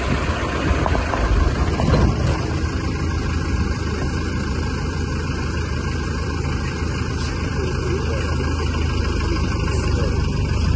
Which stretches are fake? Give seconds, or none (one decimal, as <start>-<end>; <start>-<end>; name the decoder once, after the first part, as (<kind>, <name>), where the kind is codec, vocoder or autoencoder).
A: 0.0-7.5 (vocoder, BigVGAN v2); 9.0-10.8